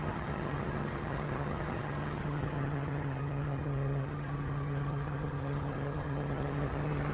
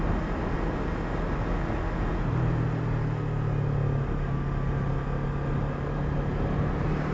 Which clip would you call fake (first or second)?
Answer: first